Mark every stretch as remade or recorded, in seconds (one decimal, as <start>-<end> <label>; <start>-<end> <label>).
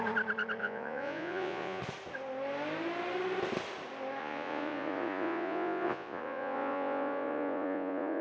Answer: 0.0-0.6 recorded; 0.6-1.8 remade; 1.8-4.2 recorded; 4.2-8.2 remade